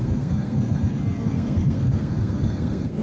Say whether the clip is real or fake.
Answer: fake